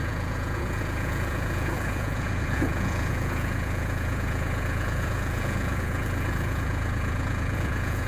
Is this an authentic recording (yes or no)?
no